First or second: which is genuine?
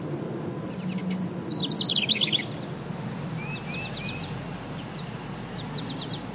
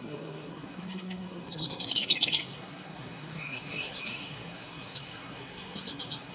first